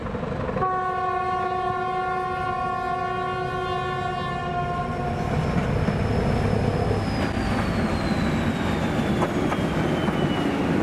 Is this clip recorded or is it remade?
recorded